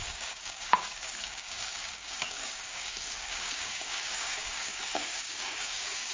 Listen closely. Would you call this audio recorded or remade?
remade